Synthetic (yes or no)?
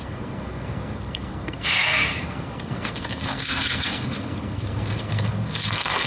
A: yes